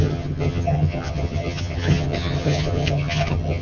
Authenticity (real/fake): fake